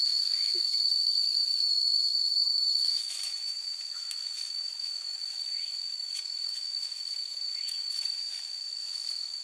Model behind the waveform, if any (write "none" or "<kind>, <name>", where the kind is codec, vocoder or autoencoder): autoencoder, DAC-VAE